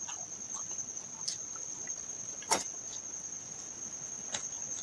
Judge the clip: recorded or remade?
recorded